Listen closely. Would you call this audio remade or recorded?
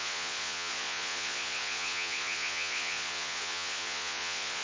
remade